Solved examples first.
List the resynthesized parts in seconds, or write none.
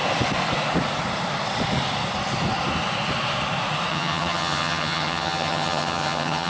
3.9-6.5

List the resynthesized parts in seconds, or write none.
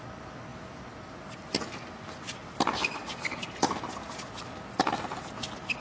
none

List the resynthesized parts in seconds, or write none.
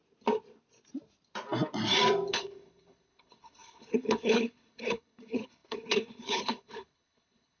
2.3-7.6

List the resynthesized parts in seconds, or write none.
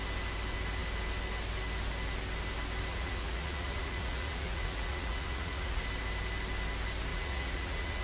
2.9-5.8; 7.1-8.0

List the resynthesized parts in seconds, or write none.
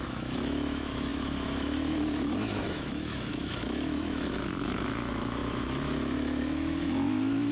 0.0-7.5